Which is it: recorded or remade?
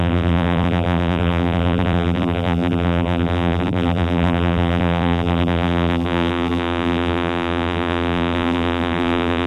remade